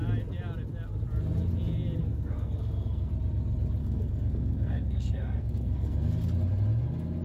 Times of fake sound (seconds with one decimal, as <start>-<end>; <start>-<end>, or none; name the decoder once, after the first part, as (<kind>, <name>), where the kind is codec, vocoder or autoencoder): 2.0-3.1 (codec, SNAC); 3.8-6.1